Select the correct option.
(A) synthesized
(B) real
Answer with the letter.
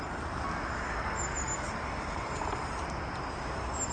B